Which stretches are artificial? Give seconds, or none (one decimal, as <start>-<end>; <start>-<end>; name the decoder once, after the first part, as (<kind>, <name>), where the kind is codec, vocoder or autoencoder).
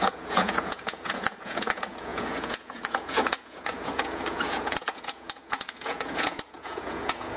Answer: 0.0-7.4 (vocoder, Vocos)